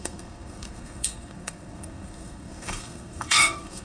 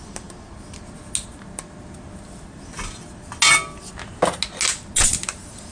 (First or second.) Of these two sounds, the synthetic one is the first